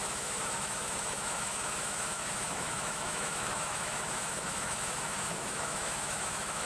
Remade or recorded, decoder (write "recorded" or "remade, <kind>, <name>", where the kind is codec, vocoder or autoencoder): remade, autoencoder, DAC-VAE